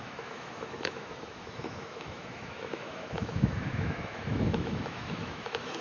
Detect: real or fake fake